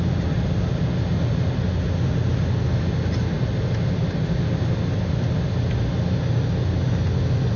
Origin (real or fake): real